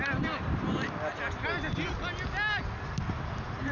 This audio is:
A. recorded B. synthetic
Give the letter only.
A